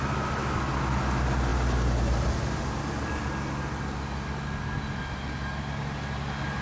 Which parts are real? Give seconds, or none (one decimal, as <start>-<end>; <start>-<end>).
0.0-6.6